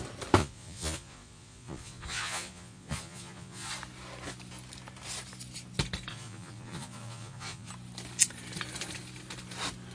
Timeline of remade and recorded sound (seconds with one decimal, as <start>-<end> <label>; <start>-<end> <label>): 0.0-0.4 recorded; 0.4-3.7 remade; 3.7-6.1 recorded; 6.1-7.7 remade; 7.7-9.9 recorded